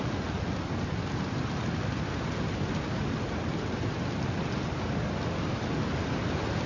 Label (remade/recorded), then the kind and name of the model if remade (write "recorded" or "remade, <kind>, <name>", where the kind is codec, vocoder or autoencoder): recorded